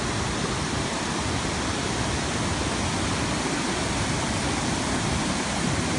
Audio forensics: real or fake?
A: real